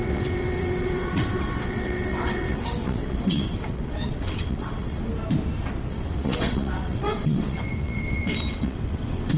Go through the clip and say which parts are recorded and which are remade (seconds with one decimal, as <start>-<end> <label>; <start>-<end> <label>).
0.0-5.1 remade; 5.1-5.9 recorded; 5.9-9.4 remade